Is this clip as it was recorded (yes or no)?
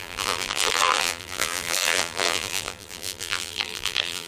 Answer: no